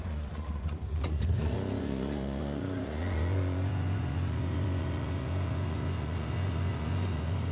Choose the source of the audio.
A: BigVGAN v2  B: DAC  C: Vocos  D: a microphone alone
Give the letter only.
C